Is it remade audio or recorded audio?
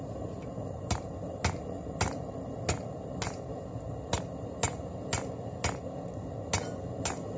recorded